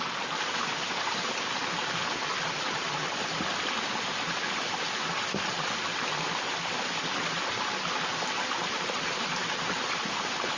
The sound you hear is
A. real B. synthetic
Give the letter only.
A